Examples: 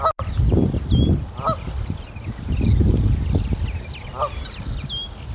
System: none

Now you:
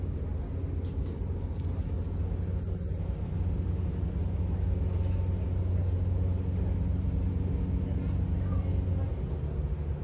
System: none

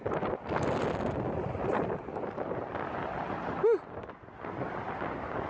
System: none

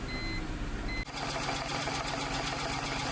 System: none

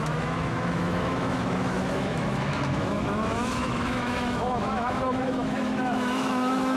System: autoencoder, DAC-VAE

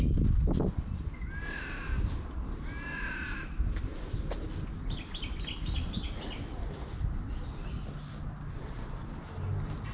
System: none